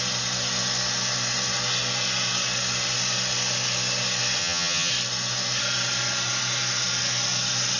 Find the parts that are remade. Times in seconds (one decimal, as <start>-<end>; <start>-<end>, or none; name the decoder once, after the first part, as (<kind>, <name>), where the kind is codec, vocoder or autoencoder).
4.4-4.9 (vocoder, HiFi-GAN)